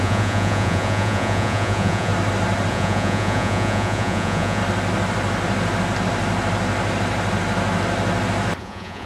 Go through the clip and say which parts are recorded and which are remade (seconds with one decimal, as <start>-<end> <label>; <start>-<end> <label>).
0.0-2.1 remade; 2.1-2.7 recorded; 2.7-4.6 remade; 4.6-8.6 recorded; 8.6-9.1 remade